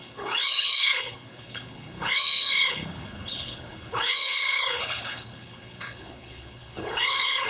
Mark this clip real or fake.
fake